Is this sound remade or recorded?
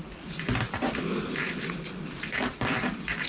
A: recorded